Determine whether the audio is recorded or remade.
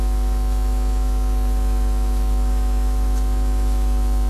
remade